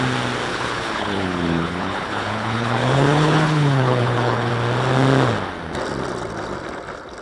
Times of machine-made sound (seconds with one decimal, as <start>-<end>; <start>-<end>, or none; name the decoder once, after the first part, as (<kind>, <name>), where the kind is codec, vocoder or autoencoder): 0.5-4.5 (codec, HILCodec)